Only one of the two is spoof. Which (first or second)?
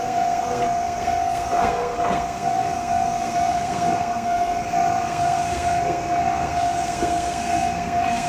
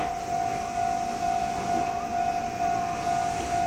first